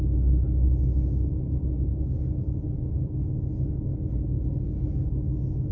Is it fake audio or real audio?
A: real